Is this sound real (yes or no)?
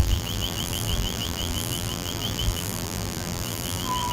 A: no